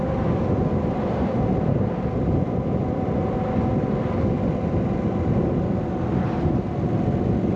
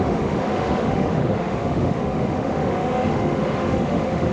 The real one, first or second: first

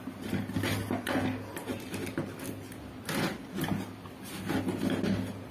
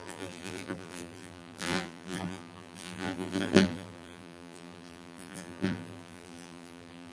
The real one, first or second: first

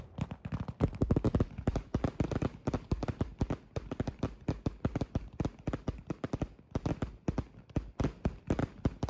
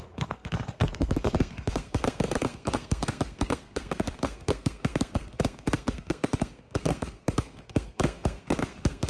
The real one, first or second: first